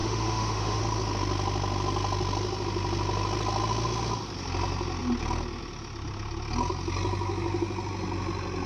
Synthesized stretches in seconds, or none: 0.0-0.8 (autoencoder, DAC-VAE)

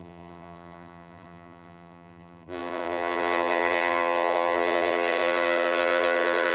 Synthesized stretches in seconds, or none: 0.0-6.5 (vocoder, BigVGAN v2)

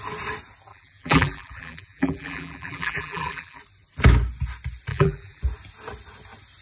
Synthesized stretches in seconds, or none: 0.7-3.6 (vocoder, BigVGAN v2); 4.9-5.4

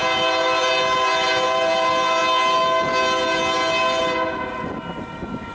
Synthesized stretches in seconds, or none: none

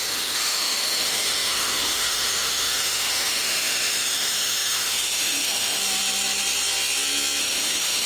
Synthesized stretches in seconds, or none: 0.0-5.8 (autoencoder, DAC-VAE); 7.4-8.1

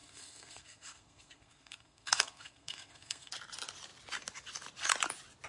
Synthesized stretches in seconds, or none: 0.0-3.3 (codec, SNAC)